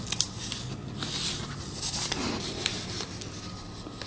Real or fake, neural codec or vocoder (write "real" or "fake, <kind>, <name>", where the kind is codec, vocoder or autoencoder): real